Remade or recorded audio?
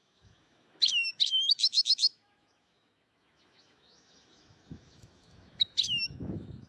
remade